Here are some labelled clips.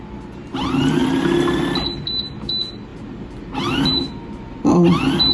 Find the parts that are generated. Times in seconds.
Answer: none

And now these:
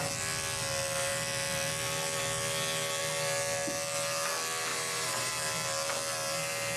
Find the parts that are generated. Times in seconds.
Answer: 4.7-5.3 (vocoder, BigVGAN v2)

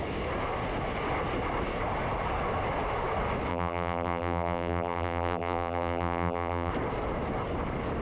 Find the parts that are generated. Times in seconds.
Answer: 3.5-6.7 (vocoder, BigVGAN v2)

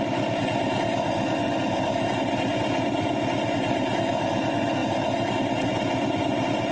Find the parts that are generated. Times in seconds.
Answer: none